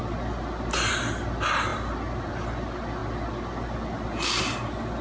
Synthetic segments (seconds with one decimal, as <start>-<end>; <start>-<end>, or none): none